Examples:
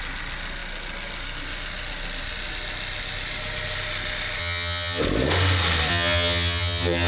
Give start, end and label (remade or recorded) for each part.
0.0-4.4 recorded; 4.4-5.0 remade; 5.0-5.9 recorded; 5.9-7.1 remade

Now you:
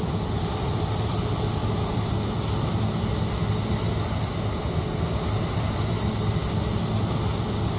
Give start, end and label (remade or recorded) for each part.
0.0-7.8 recorded

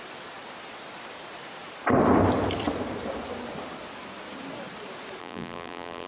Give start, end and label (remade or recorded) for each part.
0.0-5.2 recorded; 5.2-6.1 remade

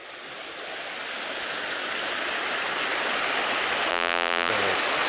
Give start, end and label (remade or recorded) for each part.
0.0-3.9 recorded; 3.9-4.5 remade; 4.5-5.1 recorded

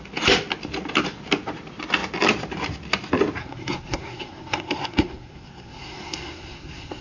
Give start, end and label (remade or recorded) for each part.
0.0-3.4 recorded; 3.4-7.0 remade